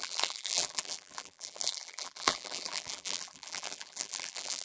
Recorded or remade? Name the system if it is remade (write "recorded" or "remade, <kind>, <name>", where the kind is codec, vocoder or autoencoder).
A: remade, vocoder, BigVGAN v2